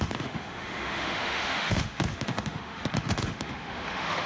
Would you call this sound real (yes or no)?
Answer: no